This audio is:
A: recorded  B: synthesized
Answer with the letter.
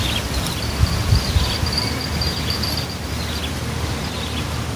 B